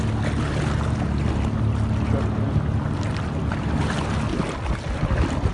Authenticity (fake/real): real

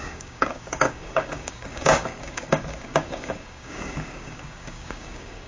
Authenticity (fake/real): fake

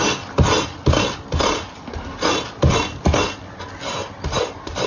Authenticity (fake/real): real